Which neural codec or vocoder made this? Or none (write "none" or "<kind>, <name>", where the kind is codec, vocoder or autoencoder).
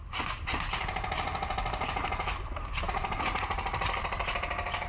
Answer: vocoder, BigVGAN v2